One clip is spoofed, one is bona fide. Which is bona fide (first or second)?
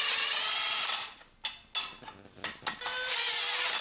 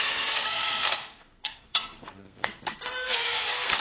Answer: first